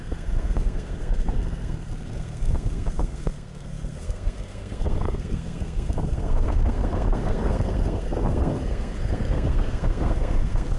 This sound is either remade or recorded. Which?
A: remade